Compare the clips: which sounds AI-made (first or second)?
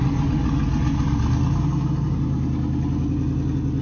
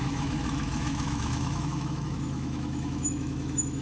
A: second